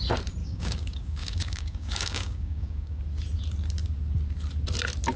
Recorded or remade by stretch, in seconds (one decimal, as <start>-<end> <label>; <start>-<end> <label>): 0.0-0.4 recorded; 0.4-3.0 remade; 3.0-5.2 recorded